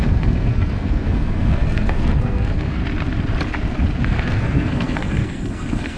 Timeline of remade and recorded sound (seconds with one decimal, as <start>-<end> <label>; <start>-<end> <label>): 0.0-2.8 remade; 2.8-4.0 recorded; 4.0-6.0 remade